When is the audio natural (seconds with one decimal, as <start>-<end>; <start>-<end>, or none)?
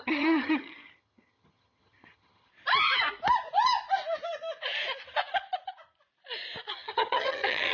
2.5-6.7